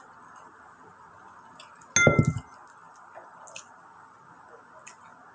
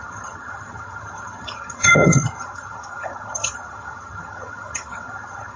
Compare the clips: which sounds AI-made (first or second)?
second